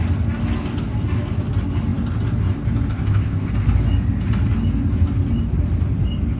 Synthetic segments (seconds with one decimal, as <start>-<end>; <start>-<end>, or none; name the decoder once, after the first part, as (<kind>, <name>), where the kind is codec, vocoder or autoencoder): 2.9-3.5 (codec, ZipCodec)